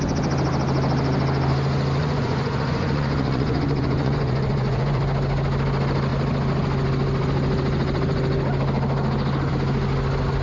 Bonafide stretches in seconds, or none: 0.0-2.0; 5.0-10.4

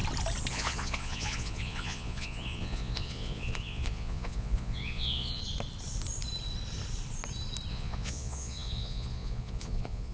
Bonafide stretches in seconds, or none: 0.0-0.5; 5.4-7.7

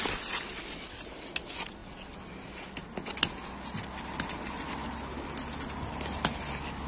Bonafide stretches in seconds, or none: 0.0-6.9

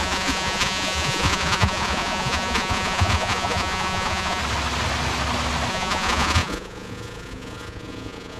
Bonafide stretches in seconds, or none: 4.4-5.7

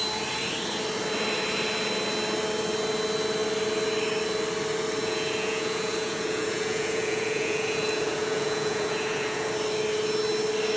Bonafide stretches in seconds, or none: 0.0-5.0; 9.5-10.8